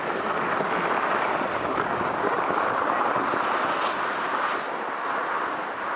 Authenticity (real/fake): real